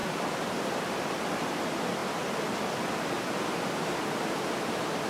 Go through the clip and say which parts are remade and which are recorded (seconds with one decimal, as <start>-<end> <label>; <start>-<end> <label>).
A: 0.0-1.2 remade; 1.2-5.1 recorded